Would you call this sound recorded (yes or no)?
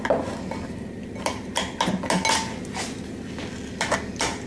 yes